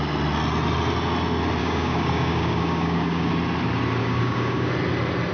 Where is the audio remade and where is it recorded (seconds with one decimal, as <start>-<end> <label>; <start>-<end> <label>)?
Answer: 0.0-1.6 recorded; 1.6-3.3 remade; 3.3-4.0 recorded; 4.0-4.7 remade; 4.7-5.3 recorded